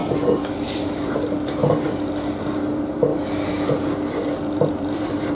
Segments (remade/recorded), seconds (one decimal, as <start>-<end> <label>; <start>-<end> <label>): 0.0-3.1 remade; 3.1-3.7 recorded; 3.7-5.3 remade